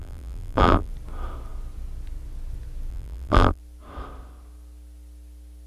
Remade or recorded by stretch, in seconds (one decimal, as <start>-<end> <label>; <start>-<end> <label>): 0.0-0.9 remade; 0.9-2.9 recorded; 2.9-3.6 remade; 3.6-5.7 recorded